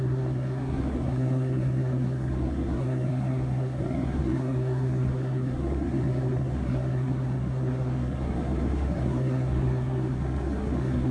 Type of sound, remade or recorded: remade